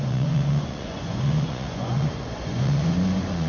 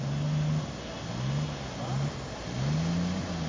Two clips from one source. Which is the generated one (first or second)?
first